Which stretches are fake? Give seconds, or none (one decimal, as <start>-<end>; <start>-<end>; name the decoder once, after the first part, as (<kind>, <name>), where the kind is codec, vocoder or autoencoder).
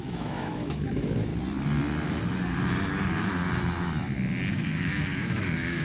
0.0-1.3 (autoencoder, DAC-VAE); 4.5-5.8